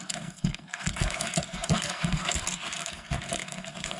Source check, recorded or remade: remade